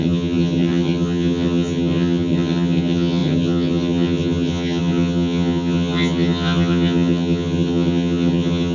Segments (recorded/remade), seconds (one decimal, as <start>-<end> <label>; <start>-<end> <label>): 0.0-8.7 remade